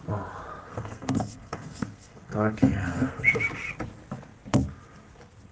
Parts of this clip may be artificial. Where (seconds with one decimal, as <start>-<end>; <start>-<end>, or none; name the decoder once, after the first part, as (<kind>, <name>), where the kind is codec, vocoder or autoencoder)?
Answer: 0.6-3.4 (codec, SNAC)